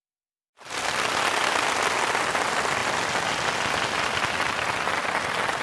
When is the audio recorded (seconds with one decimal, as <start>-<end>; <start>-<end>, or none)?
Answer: 0.0-5.6